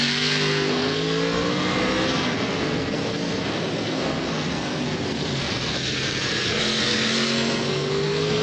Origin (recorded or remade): remade